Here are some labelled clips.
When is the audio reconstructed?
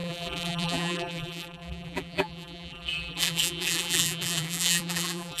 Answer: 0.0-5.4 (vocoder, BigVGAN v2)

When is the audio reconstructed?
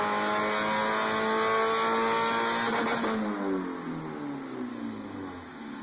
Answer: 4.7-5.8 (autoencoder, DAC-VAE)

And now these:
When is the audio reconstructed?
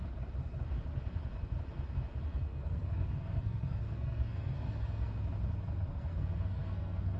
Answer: 2.5-5.1 (codec, SNAC); 5.9-7.2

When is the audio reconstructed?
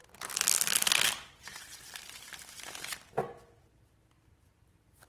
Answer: none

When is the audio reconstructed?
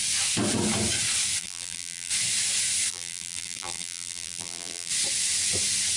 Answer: 1.4-2.1 (vocoder, BigVGAN v2); 2.9-4.9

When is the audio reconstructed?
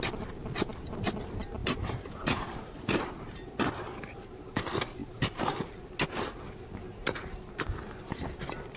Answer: 1.6-4.6 (vocoder, BigVGAN v2); 5.0-5.7; 6.8-7.6